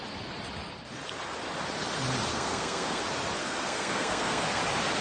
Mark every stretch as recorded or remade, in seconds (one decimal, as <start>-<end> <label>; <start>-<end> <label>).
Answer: 0.0-2.3 recorded; 2.3-3.0 remade; 3.0-3.4 recorded; 3.4-4.6 remade; 4.6-5.0 recorded